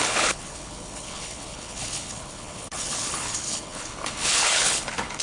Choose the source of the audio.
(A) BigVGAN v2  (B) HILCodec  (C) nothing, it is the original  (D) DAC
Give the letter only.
B